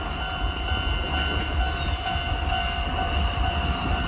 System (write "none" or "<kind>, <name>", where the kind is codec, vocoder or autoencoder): none